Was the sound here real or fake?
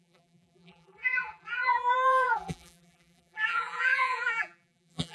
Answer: fake